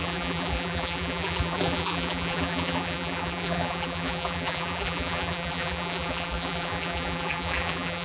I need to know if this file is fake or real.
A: fake